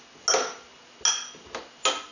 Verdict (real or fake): real